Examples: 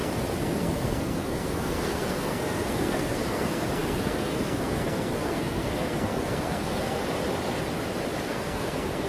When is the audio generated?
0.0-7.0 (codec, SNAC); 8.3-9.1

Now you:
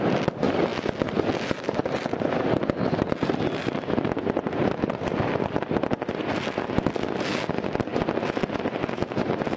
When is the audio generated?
none

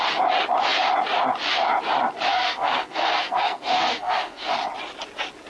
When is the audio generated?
2.3-4.5 (codec, SNAC)

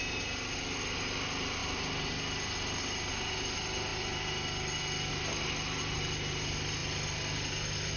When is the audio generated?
none

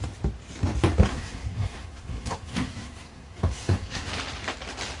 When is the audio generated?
1.1-4.1 (codec, SNAC)